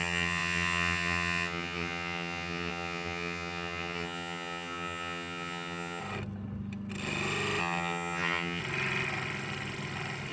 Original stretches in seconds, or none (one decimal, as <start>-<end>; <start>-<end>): 6.0-7.6; 8.6-10.3

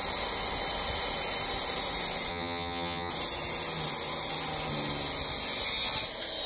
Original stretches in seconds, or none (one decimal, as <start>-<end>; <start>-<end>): 0.0-2.3; 3.1-6.5

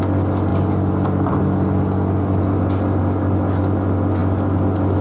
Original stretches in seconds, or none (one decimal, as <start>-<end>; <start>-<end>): 0.0-5.0

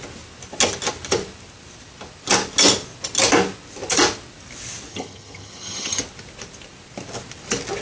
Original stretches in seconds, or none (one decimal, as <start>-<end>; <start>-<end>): 0.0-4.9; 6.0-7.8

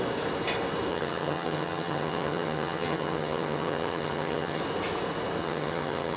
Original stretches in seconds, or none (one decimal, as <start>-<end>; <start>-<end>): 0.0-0.9; 4.6-5.4